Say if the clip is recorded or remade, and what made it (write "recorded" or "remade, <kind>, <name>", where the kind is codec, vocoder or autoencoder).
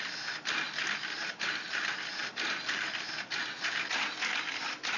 recorded